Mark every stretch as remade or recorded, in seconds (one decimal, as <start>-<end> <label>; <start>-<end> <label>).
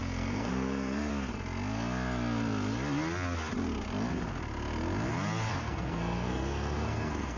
0.0-1.1 remade; 1.1-5.5 recorded; 5.5-7.4 remade